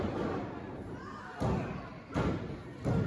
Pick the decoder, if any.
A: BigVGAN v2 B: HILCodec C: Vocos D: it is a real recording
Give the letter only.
D